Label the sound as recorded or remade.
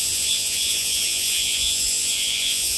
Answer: remade